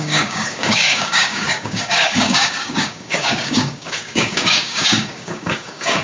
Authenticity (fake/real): fake